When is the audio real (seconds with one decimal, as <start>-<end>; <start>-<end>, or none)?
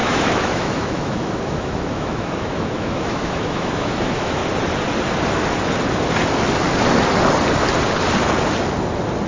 4.4-9.3